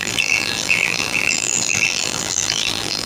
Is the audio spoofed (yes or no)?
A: yes